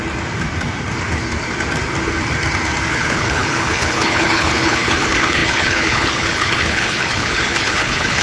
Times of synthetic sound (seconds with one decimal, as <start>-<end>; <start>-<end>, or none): 2.9-8.2